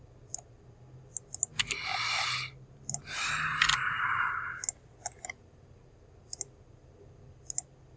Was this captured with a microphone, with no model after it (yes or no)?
yes